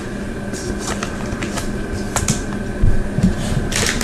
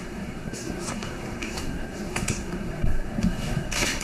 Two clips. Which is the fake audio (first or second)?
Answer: second